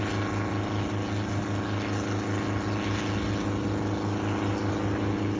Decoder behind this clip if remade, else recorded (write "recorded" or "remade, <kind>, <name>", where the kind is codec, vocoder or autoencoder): recorded